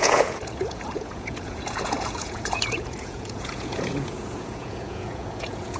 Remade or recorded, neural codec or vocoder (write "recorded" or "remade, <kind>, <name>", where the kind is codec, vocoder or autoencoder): remade, vocoder, Vocos